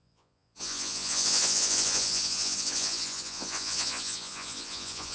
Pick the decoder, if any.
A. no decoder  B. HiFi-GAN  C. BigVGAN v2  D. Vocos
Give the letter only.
D